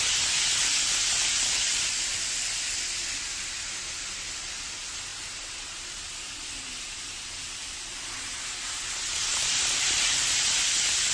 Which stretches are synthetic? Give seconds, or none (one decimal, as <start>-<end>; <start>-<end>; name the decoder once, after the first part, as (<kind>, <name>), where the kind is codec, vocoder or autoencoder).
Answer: 9.3-10.5 (vocoder, BigVGAN v2)